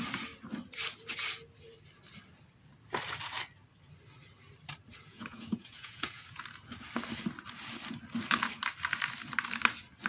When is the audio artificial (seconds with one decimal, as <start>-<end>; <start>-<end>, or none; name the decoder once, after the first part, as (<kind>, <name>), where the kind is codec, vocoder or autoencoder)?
5.1-6.4 (vocoder, Vocos)